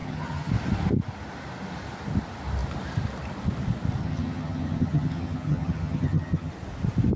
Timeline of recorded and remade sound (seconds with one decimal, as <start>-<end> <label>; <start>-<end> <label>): 0.0-0.5 remade; 0.5-4.0 recorded; 4.0-6.5 remade; 6.5-7.2 recorded